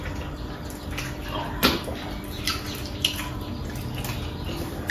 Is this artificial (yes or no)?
no